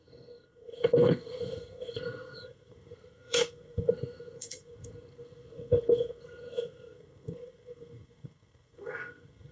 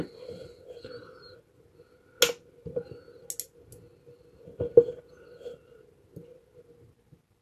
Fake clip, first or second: first